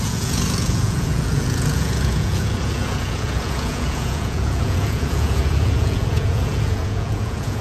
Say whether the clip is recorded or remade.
remade